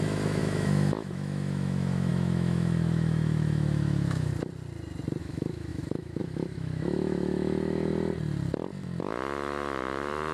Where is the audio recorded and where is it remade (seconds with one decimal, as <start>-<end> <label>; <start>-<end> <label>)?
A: 0.0-4.3 remade; 4.3-5.2 recorded; 5.2-7.9 remade; 7.9-9.0 recorded; 9.0-10.3 remade